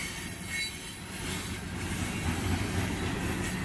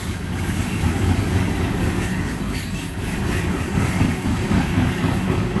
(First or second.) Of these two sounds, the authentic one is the first